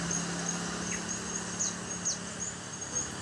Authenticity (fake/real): real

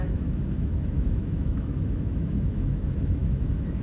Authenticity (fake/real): fake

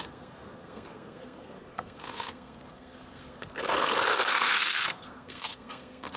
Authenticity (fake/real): fake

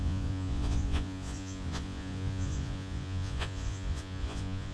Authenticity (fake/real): fake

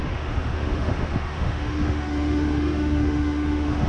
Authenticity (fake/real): fake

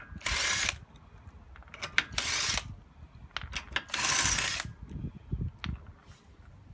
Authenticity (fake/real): real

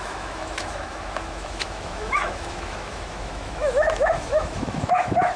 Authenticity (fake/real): fake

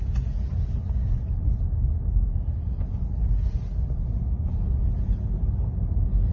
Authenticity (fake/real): real